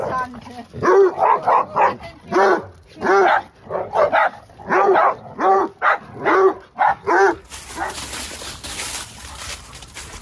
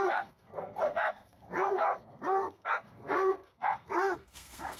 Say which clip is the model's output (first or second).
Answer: second